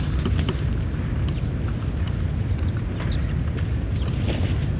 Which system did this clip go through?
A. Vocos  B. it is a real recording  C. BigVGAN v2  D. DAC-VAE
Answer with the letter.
B